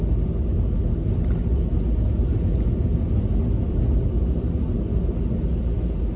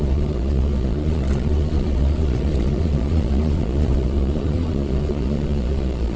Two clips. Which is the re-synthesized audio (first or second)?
second